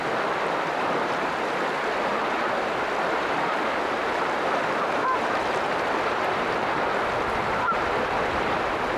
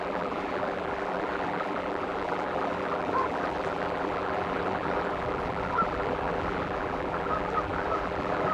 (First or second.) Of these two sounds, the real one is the first